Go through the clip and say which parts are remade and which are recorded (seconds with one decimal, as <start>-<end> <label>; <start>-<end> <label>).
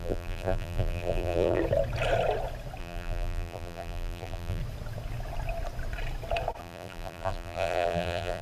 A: 0.0-1.6 remade; 1.6-2.8 recorded; 2.8-4.6 remade; 4.6-6.6 recorded; 6.6-8.4 remade